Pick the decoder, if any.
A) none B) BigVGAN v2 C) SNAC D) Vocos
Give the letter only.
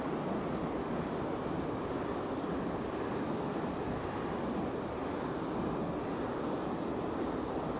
A